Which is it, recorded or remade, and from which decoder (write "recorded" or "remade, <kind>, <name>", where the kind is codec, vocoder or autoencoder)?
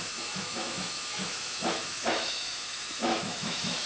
remade, autoencoder, DAC-VAE